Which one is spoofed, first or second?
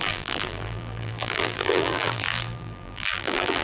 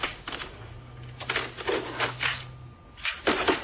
first